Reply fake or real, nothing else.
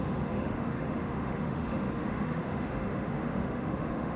fake